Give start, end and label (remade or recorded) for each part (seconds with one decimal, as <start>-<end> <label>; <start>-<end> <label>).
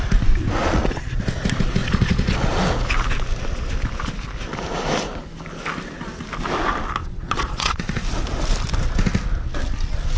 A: 0.0-0.6 recorded; 0.6-1.2 remade; 1.2-1.8 recorded; 1.8-2.6 remade; 2.6-7.0 recorded; 7.0-8.0 remade; 8.0-10.2 recorded